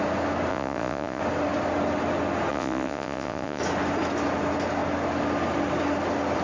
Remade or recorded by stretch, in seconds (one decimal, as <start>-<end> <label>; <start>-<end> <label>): 0.0-0.5 recorded; 0.5-1.2 remade; 1.2-2.5 recorded; 2.5-3.6 remade; 3.6-6.4 recorded